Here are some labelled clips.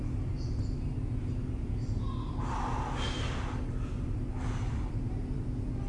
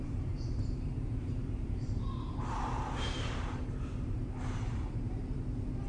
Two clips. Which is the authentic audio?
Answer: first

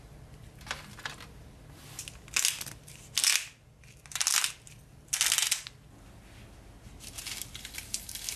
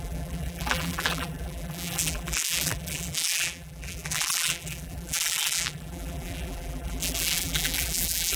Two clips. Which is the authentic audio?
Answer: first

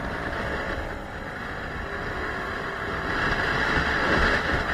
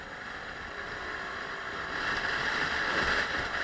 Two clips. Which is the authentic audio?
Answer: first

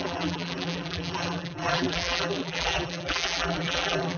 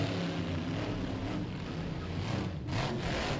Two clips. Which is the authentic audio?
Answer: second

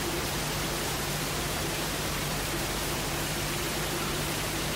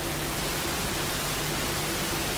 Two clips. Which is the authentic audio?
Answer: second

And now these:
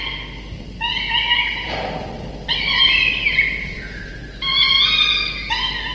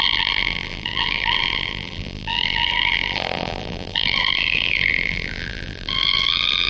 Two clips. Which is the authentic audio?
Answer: first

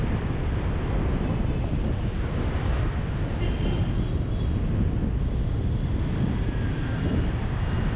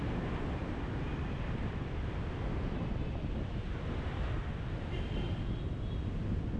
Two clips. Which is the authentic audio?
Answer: first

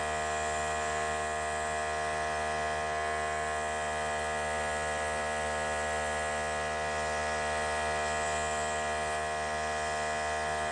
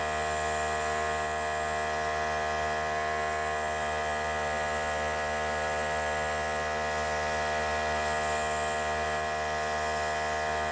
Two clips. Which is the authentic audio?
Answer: first